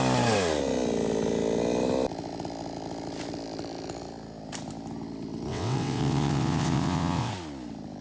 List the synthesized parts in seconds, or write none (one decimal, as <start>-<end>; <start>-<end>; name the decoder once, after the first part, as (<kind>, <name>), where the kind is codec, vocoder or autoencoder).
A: 5.5-7.3 (vocoder, WaveNeXt)